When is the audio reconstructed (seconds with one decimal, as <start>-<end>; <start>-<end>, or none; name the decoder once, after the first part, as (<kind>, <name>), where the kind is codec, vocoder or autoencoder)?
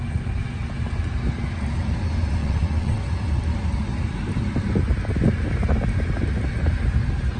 2.4-3.0 (vocoder, WaveNeXt)